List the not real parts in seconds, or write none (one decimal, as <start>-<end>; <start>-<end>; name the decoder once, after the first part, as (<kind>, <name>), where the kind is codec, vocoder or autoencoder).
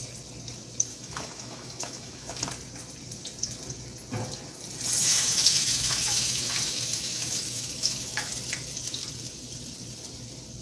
0.9-2.4 (autoencoder, DAC-VAE); 5.0-8.3